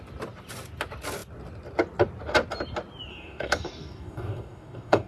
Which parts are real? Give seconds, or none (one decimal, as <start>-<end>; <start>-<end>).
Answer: 0.0-3.1